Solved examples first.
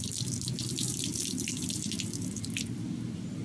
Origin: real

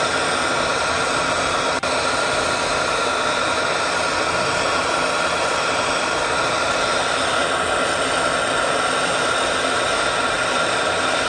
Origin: real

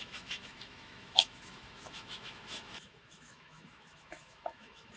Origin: fake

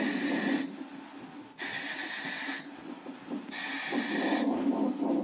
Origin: real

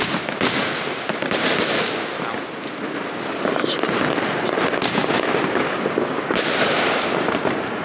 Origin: real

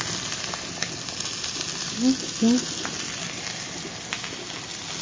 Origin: real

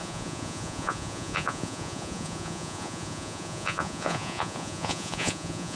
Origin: fake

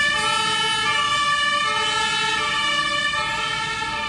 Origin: real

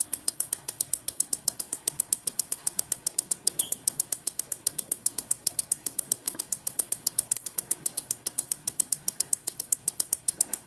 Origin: fake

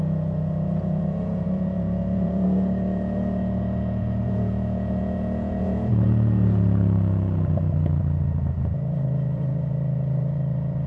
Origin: fake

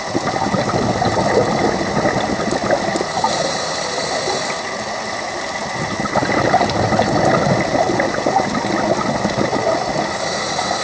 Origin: real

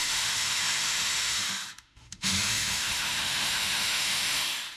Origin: fake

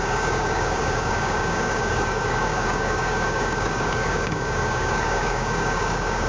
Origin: fake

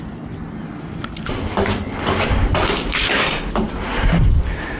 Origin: real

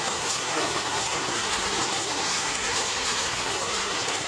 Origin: fake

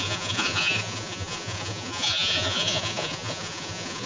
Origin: fake